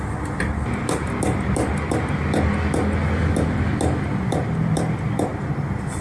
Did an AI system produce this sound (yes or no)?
no